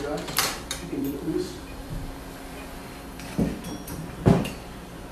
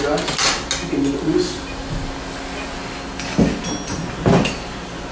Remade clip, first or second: first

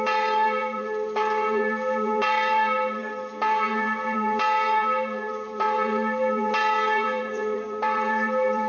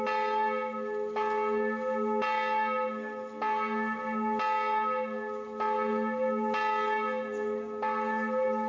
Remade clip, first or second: first